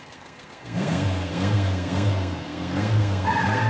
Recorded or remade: remade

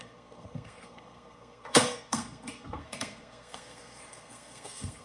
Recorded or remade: remade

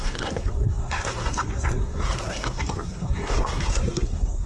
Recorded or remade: remade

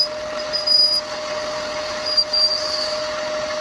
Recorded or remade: recorded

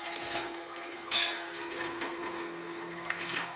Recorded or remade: remade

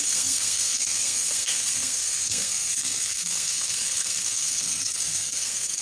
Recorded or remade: remade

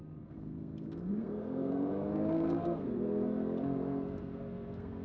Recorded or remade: remade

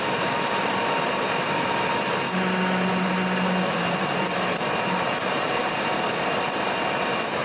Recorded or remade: recorded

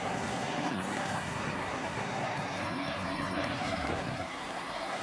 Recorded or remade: remade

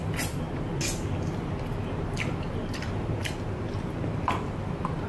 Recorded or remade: recorded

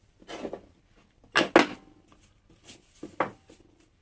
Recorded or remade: recorded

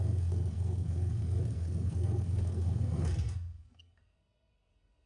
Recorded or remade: remade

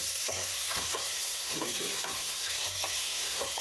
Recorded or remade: remade